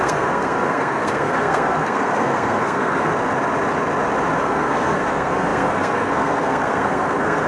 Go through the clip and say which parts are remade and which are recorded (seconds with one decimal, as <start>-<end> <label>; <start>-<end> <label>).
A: 0.0-3.1 remade; 3.1-4.4 recorded; 4.4-7.5 remade